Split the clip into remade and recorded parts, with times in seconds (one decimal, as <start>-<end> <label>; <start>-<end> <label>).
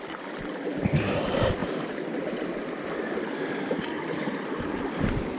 0.0-5.4 recorded